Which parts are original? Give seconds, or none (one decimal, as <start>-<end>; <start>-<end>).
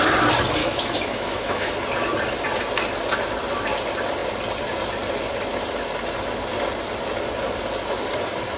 0.0-0.6; 1.7-8.6